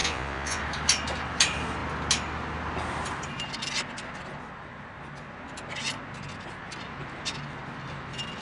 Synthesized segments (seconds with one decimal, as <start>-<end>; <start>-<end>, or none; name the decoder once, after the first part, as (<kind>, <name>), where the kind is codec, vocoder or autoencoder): 0.0-0.6 (vocoder, Vocos)